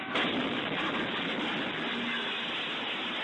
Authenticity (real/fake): real